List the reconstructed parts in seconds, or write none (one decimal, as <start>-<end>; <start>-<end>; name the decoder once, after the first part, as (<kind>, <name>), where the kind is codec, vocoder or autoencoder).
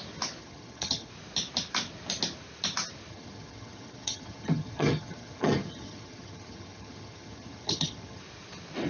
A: 0.4-1.1 (vocoder, HiFi-GAN); 3.1-8.2